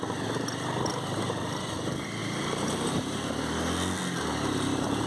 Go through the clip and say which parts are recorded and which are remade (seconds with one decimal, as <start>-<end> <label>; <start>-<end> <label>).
0.0-2.2 recorded; 2.2-3.3 remade; 3.3-5.1 recorded